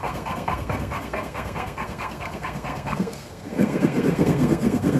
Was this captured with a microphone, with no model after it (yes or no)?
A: no